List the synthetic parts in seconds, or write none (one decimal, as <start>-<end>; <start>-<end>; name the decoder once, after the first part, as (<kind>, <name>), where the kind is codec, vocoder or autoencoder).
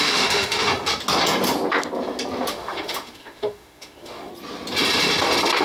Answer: 0.0-0.7 (autoencoder, DAC-VAE); 2.5-4.3